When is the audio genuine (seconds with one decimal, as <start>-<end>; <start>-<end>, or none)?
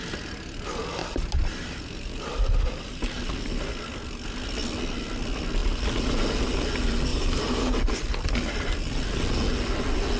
0.0-1.0; 3.2-7.1; 7.6-10.2